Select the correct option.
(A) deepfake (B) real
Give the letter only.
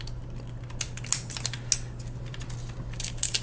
B